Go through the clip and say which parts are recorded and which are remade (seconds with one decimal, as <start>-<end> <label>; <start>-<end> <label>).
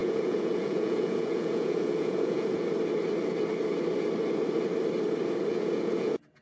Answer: 0.0-2.7 remade; 2.7-5.5 recorded; 5.5-6.4 remade